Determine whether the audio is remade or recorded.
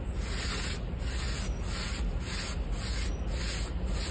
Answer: recorded